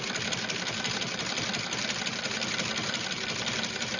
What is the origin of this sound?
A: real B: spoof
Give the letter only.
A